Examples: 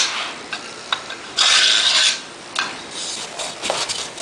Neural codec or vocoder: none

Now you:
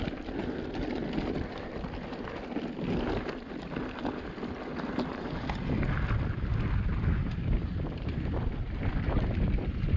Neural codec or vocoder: none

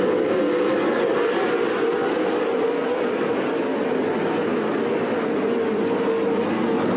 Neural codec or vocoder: none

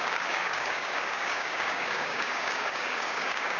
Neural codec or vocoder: codec, DAC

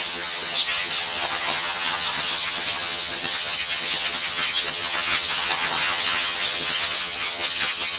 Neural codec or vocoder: vocoder, HiFi-GAN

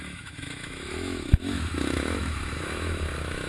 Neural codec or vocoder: autoencoder, DAC-VAE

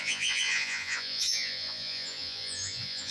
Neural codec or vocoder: vocoder, Vocos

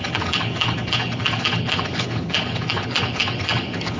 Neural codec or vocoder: codec, HILCodec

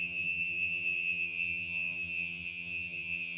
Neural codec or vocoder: vocoder, HiFi-GAN